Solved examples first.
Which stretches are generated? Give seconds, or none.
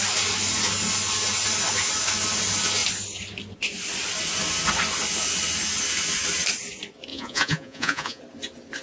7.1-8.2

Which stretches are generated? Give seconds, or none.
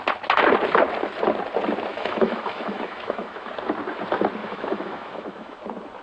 1.9-3.5; 4.4-5.6